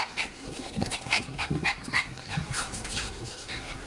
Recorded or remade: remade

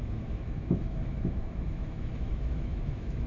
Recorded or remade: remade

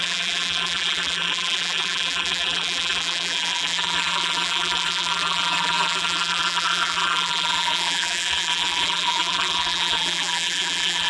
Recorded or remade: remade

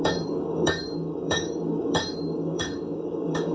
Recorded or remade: remade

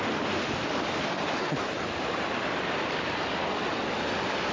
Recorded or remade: recorded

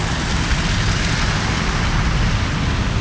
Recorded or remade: recorded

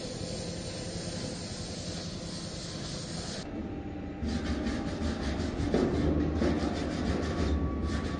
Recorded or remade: recorded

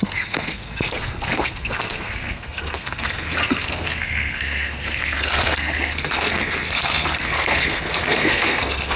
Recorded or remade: remade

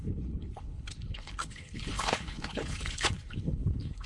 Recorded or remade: remade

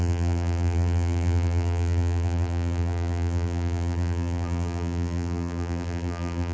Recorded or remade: remade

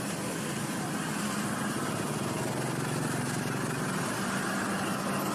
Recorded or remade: recorded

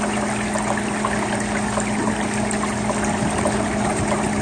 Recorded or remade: recorded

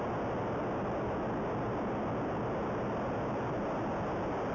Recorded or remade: recorded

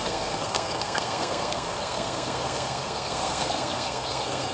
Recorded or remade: remade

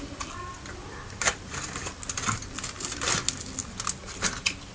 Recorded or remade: recorded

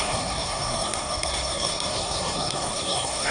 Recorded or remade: remade